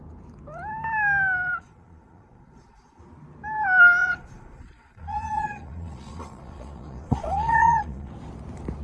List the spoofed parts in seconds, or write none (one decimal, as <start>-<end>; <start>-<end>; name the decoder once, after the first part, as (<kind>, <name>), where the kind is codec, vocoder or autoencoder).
1.5-3.0 (vocoder, Vocos); 4.0-8.1